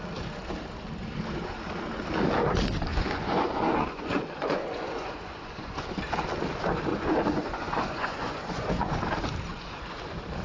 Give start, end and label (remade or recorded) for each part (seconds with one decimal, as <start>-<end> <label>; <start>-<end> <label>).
0.0-2.9 recorded; 2.9-5.9 remade; 5.9-6.9 recorded; 6.9-9.1 remade; 9.1-9.5 recorded; 9.5-10.0 remade; 10.0-10.4 recorded